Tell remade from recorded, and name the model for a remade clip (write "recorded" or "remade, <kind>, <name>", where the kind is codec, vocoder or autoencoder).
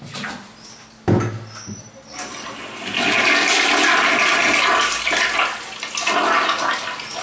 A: recorded